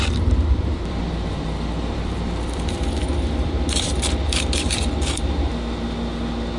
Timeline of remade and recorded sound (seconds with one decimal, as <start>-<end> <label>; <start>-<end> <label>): 0.0-5.5 remade; 5.5-6.6 recorded